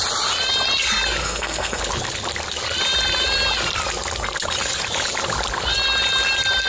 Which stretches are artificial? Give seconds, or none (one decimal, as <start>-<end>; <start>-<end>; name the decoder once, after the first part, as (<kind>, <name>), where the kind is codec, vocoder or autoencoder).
1.2-1.8 (codec, SNAC)